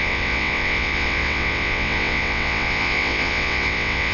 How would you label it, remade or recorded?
remade